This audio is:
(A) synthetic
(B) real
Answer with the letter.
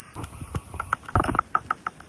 B